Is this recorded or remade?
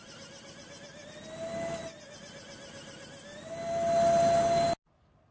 recorded